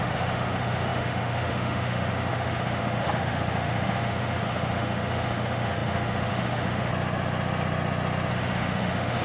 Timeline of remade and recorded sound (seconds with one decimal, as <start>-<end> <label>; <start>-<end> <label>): 0.0-6.9 remade; 6.9-8.3 recorded; 8.3-9.2 remade